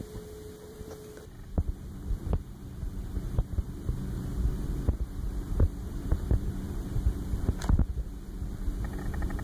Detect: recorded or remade remade